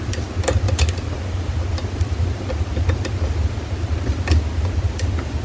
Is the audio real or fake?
real